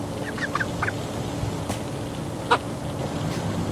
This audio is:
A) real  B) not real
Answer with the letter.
A